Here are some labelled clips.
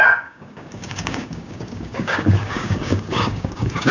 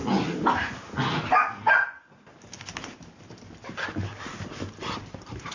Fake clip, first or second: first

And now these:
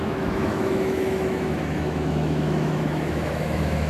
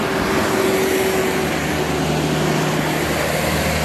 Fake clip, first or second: first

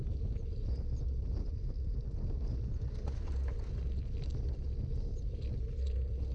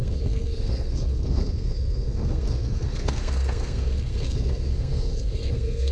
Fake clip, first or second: second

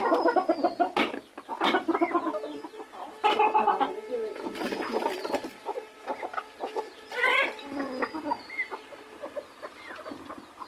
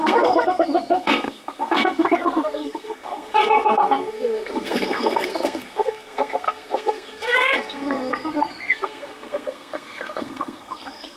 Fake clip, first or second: second